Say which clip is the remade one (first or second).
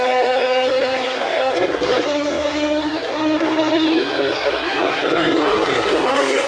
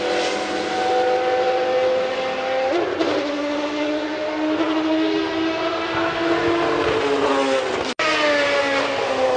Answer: first